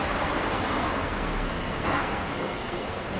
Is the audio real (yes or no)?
no